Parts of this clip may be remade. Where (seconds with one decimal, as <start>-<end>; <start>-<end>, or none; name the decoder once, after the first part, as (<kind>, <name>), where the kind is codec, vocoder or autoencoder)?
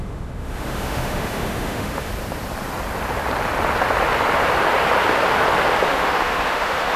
0.0-2.1 (autoencoder, DAC-VAE); 5.9-7.0